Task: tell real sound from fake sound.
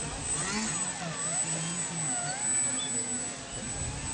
real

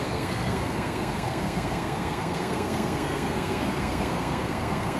fake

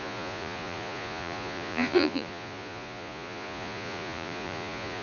fake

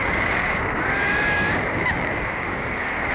fake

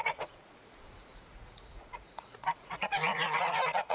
fake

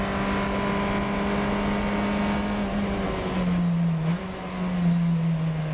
real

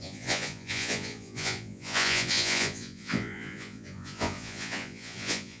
fake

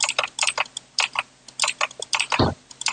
real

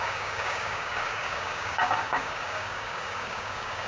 fake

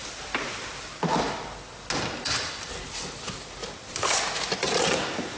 real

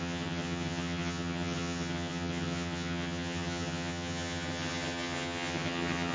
fake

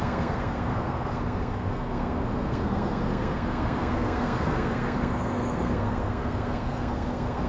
fake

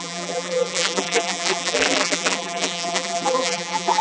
fake